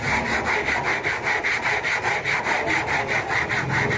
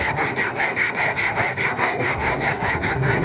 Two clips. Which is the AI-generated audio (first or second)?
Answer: second